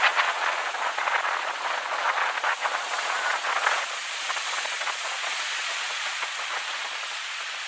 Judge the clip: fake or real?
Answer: fake